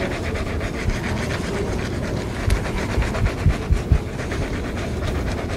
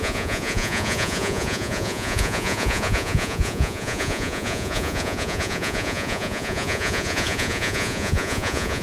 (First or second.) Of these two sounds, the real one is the first